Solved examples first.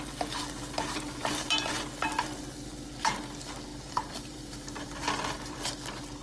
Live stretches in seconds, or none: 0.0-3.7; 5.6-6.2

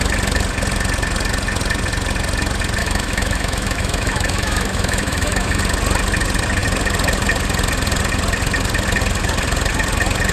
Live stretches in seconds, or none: 0.0-2.8; 5.6-10.3

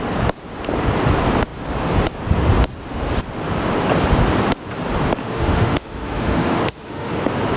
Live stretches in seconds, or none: 0.0-5.2; 7.1-7.6

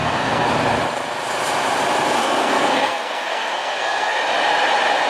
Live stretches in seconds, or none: 0.5-2.2; 4.2-5.1

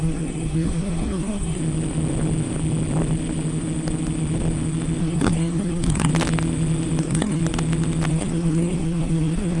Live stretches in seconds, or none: 1.6-5.0; 6.1-7.0; 7.4-8.1

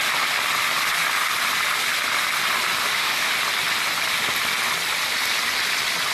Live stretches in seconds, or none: 0.0-2.8; 3.4-6.1

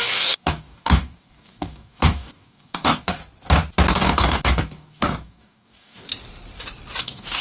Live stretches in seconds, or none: 3.2-3.9; 6.1-7.0

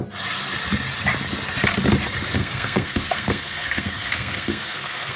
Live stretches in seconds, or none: 0.0-2.4